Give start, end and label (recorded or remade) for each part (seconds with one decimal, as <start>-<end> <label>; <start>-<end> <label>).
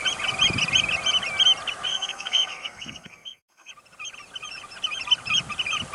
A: 0.0-1.9 recorded; 1.9-3.7 remade; 3.7-5.9 recorded